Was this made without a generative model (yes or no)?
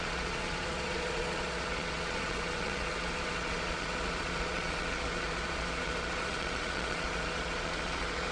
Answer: no